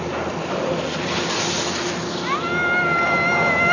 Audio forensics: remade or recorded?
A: recorded